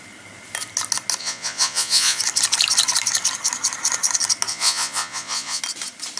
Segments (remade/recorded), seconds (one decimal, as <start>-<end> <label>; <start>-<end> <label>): 0.0-1.2 recorded; 1.2-2.2 remade; 2.2-4.5 recorded; 4.5-5.6 remade; 5.6-6.2 recorded